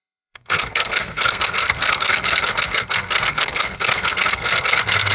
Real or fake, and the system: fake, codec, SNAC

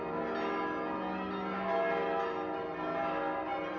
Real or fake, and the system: real